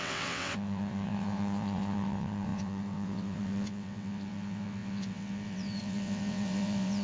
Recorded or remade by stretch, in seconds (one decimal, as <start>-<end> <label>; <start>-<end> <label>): 0.0-7.0 remade